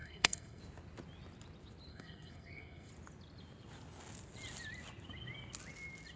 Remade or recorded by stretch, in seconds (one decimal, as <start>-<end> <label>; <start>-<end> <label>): 0.0-0.6 remade; 0.6-1.9 recorded; 1.9-2.9 remade; 2.9-6.2 recorded